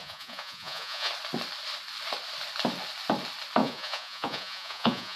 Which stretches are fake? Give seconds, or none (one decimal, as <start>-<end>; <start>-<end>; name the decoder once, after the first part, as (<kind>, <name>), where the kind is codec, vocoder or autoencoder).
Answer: 0.0-1.1 (vocoder, Vocos); 3.6-5.2